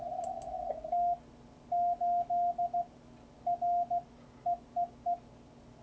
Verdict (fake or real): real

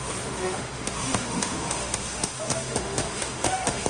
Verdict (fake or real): fake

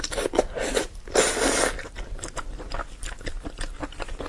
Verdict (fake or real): real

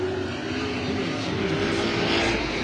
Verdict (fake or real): real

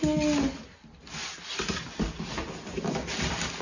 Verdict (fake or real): real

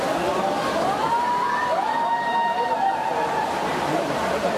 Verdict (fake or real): real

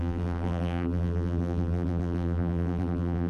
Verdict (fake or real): fake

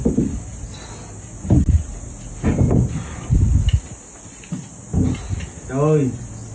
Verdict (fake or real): real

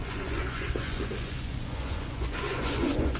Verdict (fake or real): fake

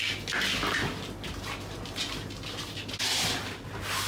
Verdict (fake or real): real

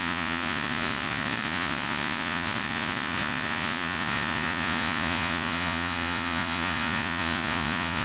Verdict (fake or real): fake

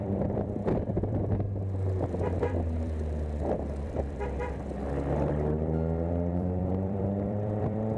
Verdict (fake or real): fake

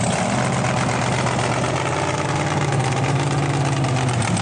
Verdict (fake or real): real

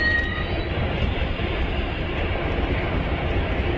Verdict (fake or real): real